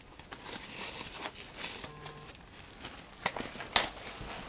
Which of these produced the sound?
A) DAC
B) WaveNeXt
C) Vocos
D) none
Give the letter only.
D